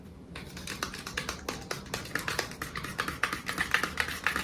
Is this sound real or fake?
real